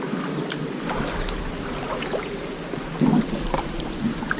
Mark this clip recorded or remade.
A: recorded